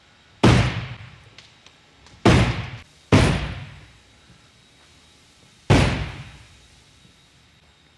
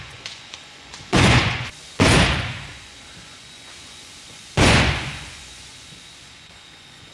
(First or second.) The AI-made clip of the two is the second